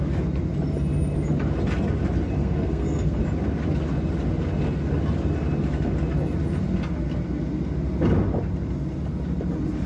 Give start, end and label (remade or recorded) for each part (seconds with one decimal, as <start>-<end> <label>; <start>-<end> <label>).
0.0-2.4 recorded; 2.4-3.2 remade; 3.2-9.9 recorded